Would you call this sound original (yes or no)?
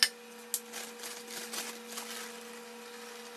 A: yes